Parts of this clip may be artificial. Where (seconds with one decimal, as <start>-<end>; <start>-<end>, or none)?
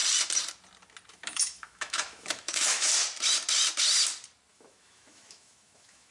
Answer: 1.1-2.9; 4.5-6.1